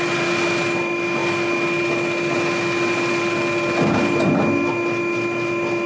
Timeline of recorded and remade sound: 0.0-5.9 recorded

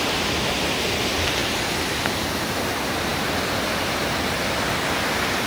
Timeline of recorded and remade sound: 0.0-5.5 recorded